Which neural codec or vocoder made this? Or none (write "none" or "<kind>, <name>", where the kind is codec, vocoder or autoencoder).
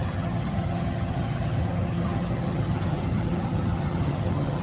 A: vocoder, HiFi-GAN